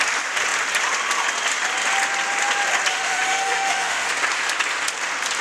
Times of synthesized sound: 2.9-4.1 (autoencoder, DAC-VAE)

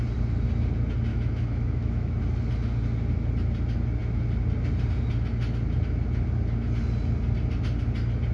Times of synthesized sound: 1.1-2.2 (autoencoder, DAC-VAE)

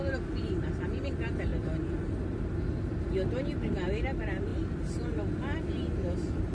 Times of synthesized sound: none